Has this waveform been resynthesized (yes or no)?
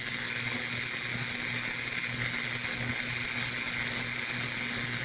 no